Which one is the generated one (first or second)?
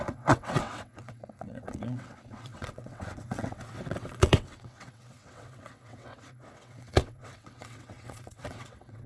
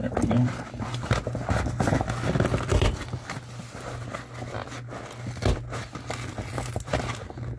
first